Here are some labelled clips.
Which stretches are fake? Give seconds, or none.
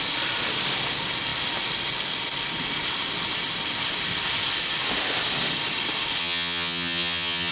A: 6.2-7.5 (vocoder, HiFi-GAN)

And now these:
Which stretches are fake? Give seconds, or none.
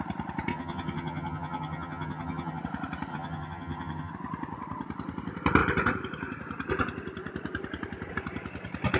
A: 0.5-2.6 (vocoder, HiFi-GAN); 3.1-4.1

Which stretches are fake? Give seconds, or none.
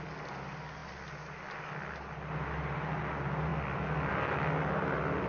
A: none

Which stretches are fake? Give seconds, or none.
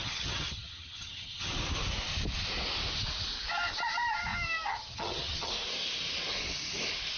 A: 0.0-1.5 (vocoder, HiFi-GAN); 4.7-5.5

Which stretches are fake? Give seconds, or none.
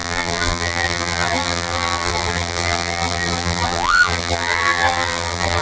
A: 0.0-5.6 (vocoder, BigVGAN v2)